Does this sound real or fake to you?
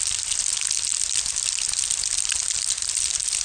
real